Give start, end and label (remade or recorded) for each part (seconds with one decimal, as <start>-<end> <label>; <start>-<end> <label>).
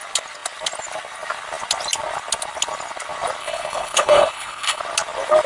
0.0-3.4 recorded; 3.4-4.8 remade; 4.8-5.5 recorded